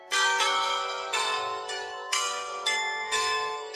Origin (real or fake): fake